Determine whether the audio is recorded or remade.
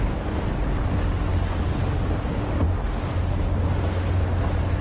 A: recorded